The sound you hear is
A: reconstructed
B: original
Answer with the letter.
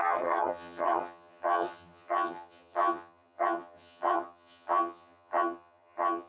A